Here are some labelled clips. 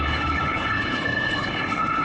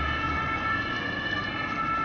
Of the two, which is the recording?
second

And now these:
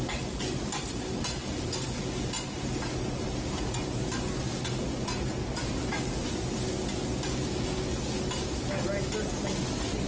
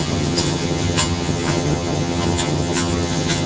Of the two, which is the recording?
first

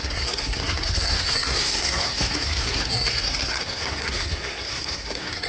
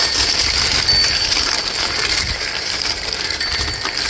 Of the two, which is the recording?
second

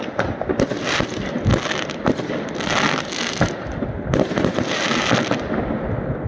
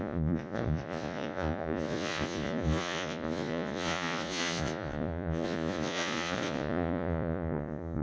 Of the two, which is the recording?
first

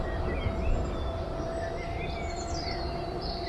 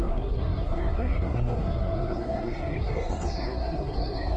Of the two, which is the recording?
first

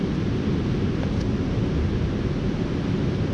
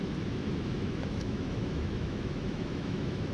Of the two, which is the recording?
first